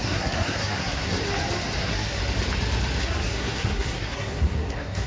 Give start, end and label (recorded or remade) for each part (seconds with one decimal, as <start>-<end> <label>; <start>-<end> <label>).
0.0-1.2 remade; 1.2-1.8 recorded; 1.8-2.2 remade; 2.2-3.0 recorded; 3.0-5.1 remade